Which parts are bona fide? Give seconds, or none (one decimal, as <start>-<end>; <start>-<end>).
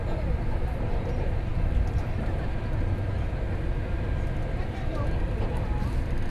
0.0-6.3